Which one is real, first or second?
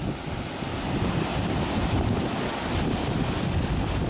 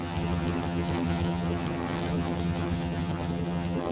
first